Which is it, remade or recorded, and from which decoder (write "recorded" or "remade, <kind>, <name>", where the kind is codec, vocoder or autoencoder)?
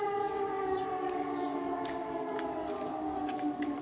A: remade, codec, DAC